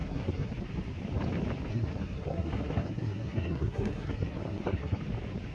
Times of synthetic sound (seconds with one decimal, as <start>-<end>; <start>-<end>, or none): 0.0-0.5; 1.7-5.0